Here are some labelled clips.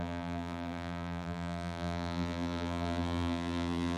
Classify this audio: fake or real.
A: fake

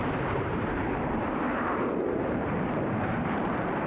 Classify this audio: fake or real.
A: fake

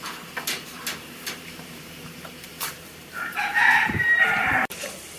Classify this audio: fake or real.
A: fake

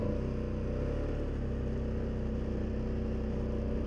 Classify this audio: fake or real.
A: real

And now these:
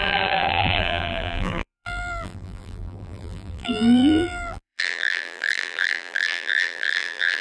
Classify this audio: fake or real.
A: fake